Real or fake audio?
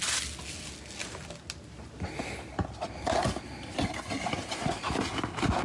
real